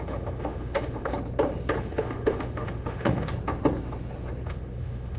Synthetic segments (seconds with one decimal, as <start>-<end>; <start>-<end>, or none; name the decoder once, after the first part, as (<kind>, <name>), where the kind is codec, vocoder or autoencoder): 0.0-1.1 (autoencoder, DAC-VAE); 1.8-3.3; 4.4-5.2